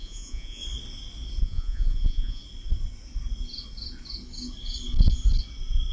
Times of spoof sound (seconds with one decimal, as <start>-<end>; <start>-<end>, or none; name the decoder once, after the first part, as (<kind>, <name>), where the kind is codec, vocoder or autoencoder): 0.0-0.6 (vocoder, Vocos); 1.4-2.4